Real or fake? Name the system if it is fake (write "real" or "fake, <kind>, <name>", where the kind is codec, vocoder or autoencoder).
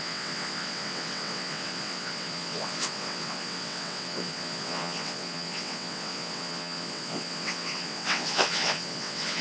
fake, vocoder, WaveNeXt